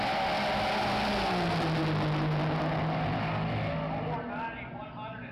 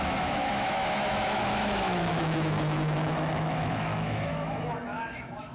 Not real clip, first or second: second